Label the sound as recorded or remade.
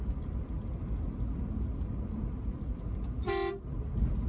recorded